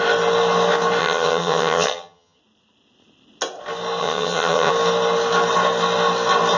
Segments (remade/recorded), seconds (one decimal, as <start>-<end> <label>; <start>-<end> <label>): 0.0-1.0 recorded; 1.0-2.4 remade; 2.4-4.0 recorded; 4.0-4.7 remade; 4.7-6.6 recorded